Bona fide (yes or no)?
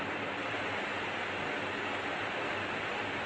yes